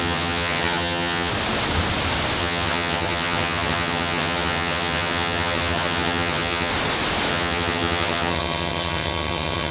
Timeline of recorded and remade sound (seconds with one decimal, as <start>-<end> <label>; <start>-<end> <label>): 0.0-1.3 remade; 1.3-2.4 recorded; 2.4-6.7 remade; 6.7-7.3 recorded; 7.3-9.7 remade